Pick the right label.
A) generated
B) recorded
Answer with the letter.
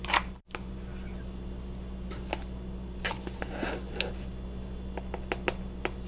B